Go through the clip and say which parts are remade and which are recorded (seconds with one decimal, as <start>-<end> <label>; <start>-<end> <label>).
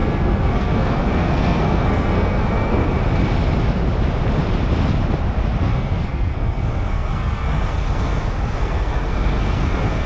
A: 0.0-2.8 remade; 2.8-5.6 recorded; 5.6-10.1 remade